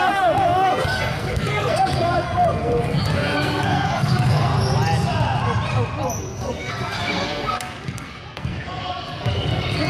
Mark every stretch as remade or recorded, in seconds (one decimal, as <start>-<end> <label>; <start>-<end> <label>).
0.0-4.5 remade; 4.5-6.2 recorded; 6.2-9.9 remade